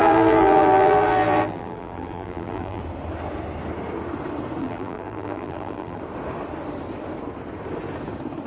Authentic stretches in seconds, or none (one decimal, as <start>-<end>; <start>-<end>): 2.8-4.6; 6.0-8.5

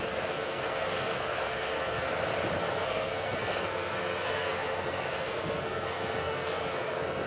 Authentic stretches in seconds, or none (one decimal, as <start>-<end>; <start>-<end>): 2.1-2.6

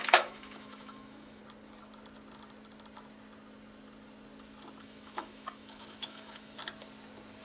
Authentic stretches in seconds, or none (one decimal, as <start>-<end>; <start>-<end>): 1.4-4.8; 6.6-7.4

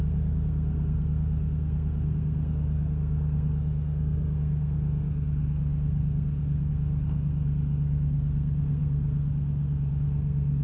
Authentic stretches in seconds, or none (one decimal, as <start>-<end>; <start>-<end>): none

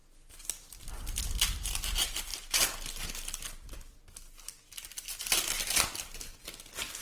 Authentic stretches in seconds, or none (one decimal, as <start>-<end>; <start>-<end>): 0.0-7.0